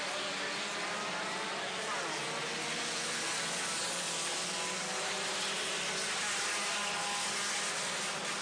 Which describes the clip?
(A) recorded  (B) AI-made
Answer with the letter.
A